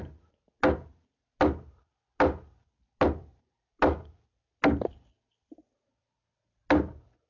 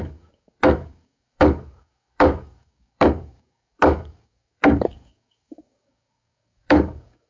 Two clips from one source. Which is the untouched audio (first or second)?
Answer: first